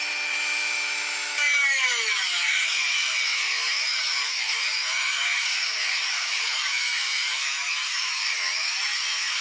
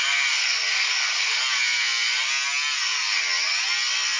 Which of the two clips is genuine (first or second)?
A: second